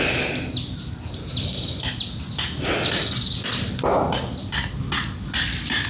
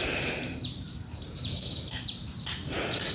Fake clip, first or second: second